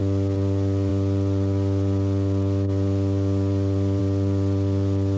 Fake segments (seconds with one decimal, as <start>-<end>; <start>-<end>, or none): 0.0-5.2